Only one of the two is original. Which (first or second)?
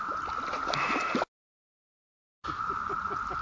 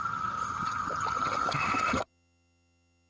first